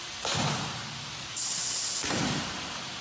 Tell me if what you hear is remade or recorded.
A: recorded